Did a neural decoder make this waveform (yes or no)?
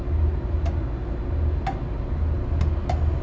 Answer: no